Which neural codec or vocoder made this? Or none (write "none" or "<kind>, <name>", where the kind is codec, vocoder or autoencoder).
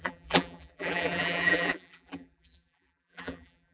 vocoder, BigVGAN v2